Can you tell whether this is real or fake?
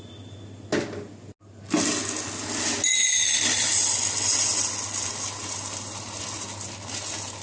real